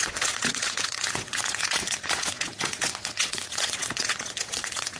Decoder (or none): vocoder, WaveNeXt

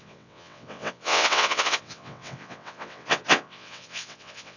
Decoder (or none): vocoder, WaveNeXt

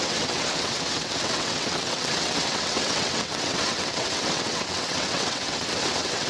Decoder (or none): vocoder, WaveNeXt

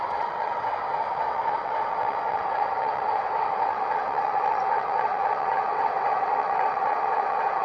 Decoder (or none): vocoder, WaveNeXt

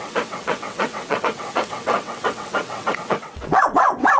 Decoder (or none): vocoder, WaveNeXt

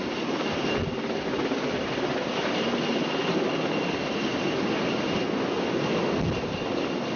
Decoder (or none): none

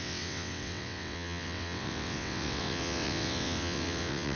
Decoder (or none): vocoder, WaveNeXt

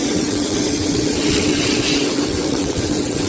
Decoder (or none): vocoder, WaveNeXt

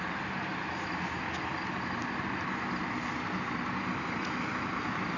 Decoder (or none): none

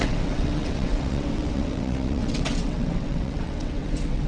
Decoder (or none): vocoder, WaveNeXt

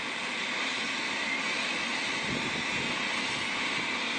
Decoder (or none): none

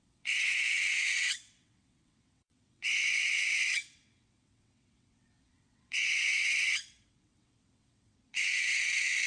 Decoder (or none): vocoder, WaveNeXt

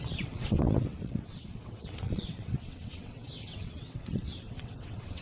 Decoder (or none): vocoder, WaveNeXt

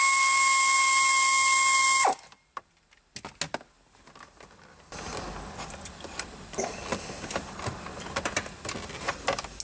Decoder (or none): none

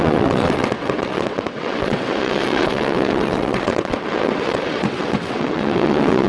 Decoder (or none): vocoder, WaveNeXt